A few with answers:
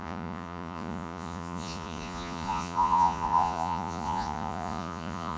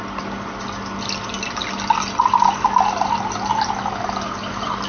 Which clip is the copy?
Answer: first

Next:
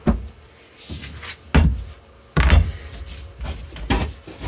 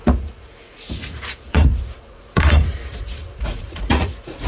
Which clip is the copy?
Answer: second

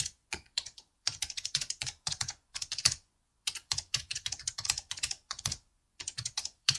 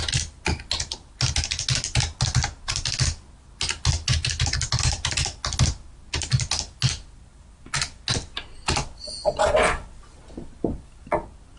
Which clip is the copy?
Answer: first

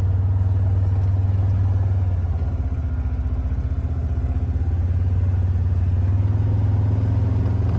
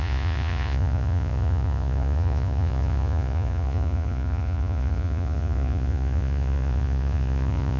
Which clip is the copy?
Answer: second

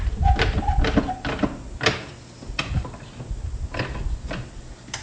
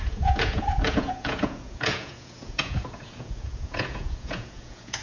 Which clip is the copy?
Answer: second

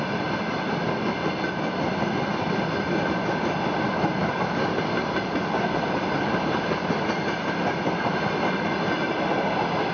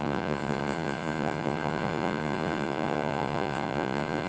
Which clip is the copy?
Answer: second